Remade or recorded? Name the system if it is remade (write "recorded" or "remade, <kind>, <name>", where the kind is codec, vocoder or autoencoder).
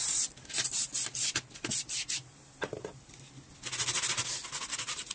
recorded